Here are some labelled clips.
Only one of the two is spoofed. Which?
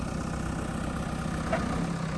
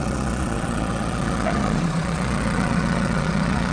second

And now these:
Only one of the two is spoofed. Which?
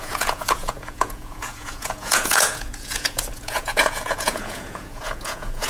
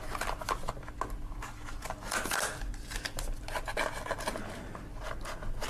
first